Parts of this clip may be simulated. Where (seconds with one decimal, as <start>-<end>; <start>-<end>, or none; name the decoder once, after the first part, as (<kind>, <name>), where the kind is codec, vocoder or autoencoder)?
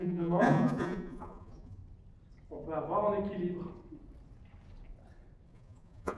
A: 0.0-1.8 (vocoder, Vocos); 5.5-6.2